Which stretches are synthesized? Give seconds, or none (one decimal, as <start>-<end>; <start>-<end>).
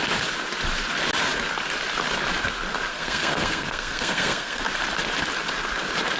2.9-4.6